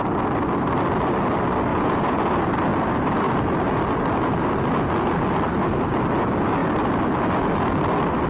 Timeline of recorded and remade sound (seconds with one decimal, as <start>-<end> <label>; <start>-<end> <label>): 0.0-1.7 recorded; 1.7-2.2 remade; 2.2-8.3 recorded